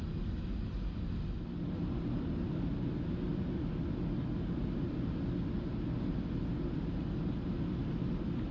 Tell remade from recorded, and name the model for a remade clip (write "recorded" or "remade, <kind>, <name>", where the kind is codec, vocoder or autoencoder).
recorded